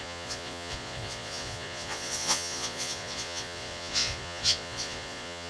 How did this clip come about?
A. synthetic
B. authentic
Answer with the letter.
A